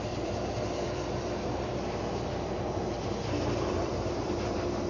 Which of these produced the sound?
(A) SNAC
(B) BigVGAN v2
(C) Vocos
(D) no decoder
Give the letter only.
B